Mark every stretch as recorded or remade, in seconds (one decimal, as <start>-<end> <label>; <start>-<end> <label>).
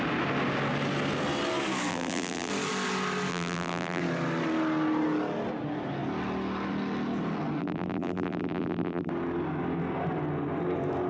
0.0-1.9 recorded; 1.9-2.5 remade; 2.5-3.3 recorded; 3.3-4.0 remade; 4.0-7.6 recorded; 7.6-9.1 remade; 9.1-11.1 recorded